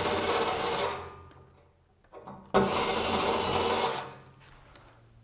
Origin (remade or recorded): recorded